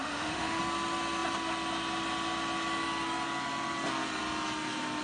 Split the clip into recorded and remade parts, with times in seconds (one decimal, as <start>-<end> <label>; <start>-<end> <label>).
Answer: 0.0-0.6 remade; 0.6-5.0 recorded